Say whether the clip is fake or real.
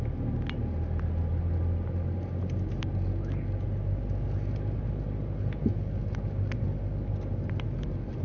real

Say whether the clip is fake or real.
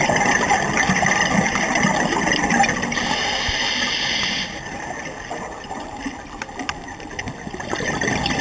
real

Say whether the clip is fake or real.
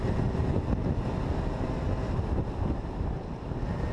real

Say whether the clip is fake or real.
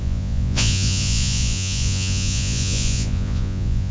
fake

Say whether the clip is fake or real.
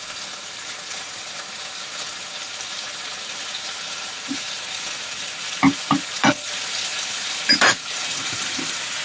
fake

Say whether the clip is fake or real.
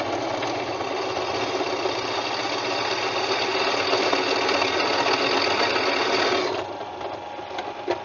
real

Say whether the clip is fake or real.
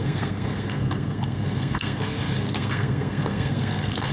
fake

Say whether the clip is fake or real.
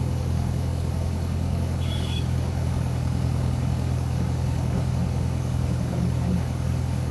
fake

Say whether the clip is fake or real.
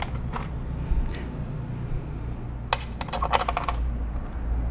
real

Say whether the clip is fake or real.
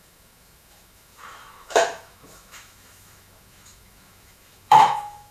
fake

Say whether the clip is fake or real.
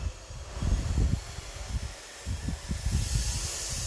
real